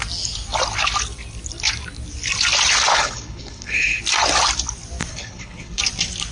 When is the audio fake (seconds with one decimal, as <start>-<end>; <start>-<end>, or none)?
2.9-4.0; 5.1-5.8